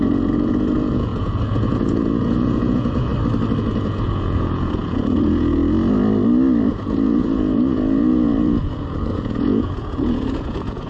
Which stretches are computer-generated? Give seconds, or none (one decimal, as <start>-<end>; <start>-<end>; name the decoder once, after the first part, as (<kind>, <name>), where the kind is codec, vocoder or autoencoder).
0.0-3.1 (vocoder, Vocos); 3.6-5.6; 6.7-10.9